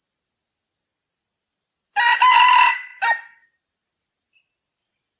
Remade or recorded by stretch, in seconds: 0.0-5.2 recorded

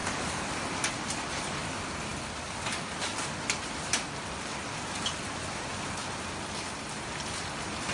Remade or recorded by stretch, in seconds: 0.0-0.9 remade; 0.9-6.0 recorded; 6.0-6.7 remade; 6.7-7.9 recorded

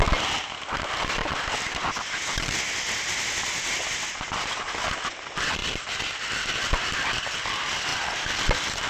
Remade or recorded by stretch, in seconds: 0.0-8.9 recorded

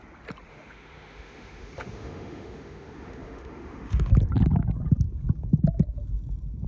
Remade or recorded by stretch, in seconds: 0.0-0.5 recorded; 0.5-4.1 remade; 4.1-6.7 recorded

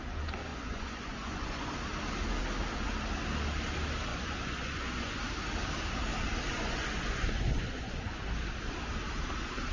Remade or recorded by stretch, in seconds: 0.0-0.5 recorded; 0.5-1.7 remade; 1.7-4.1 recorded; 4.1-5.2 remade; 5.2-6.5 recorded; 6.5-8.2 remade; 8.2-9.7 recorded

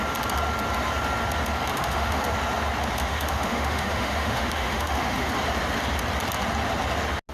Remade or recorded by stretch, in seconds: 0.0-1.7 recorded; 1.7-2.2 remade; 2.2-3.0 recorded; 3.0-5.3 remade; 5.3-7.3 recorded

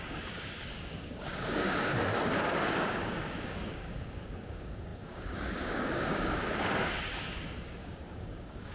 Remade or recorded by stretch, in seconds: 0.0-8.7 remade

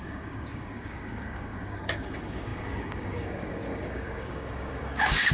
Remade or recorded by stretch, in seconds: 0.0-5.3 remade